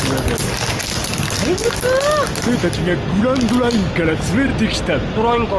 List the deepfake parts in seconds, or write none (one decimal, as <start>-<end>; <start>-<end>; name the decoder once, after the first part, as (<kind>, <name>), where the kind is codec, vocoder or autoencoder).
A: none